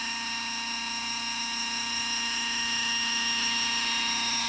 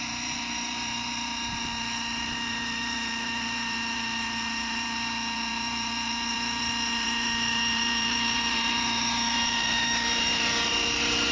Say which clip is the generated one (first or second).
second